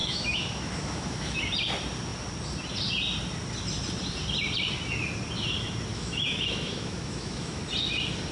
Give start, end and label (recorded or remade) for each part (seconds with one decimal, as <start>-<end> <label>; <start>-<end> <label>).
0.0-1.4 remade; 1.4-5.9 recorded; 5.9-7.6 remade; 7.6-8.3 recorded